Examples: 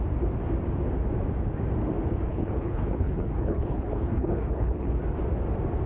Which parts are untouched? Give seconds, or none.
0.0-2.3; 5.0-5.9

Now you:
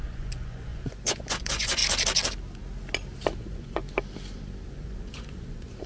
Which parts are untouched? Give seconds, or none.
1.8-3.4; 3.8-4.7

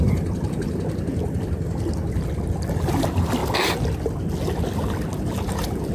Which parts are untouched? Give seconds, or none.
0.0-5.9